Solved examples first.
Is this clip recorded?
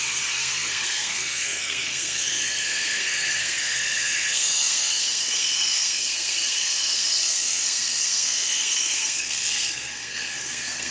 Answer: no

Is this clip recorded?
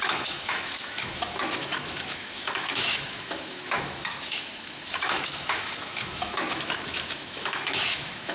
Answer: no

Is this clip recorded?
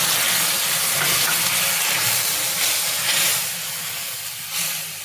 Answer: yes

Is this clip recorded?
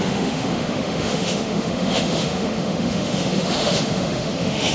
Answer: no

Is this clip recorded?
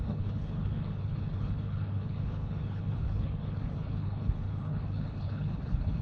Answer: no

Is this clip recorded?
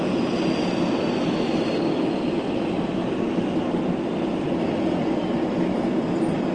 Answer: yes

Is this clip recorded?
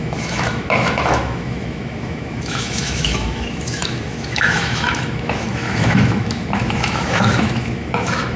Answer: no